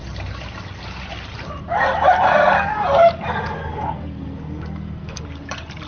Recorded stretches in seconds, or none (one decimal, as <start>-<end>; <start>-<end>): 0.0-3.6; 5.2-5.9

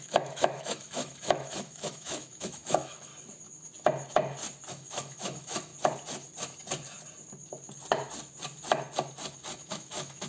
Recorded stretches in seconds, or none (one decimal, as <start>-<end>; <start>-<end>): 3.1-4.7; 5.7-9.7

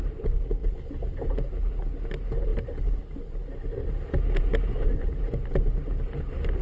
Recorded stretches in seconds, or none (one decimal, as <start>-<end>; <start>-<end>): 0.0-6.6

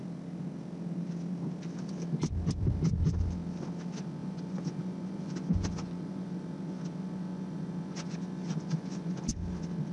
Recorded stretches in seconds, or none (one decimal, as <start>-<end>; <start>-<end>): 0.0-4.2; 9.2-9.9

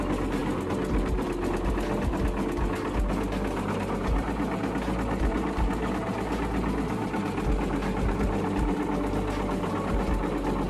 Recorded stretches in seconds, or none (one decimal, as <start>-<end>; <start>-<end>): 0.0-10.7